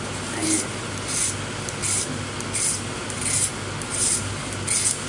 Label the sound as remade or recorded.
recorded